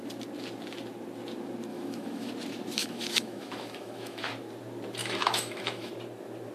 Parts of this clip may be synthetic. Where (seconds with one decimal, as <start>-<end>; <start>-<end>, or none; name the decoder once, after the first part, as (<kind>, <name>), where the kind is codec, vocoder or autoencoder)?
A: 1.7-2.3 (autoencoder, DAC-VAE); 2.8-4.3; 5.0-5.9